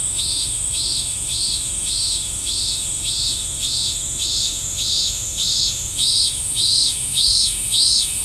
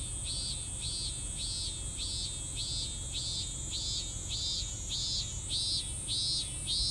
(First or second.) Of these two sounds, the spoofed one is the first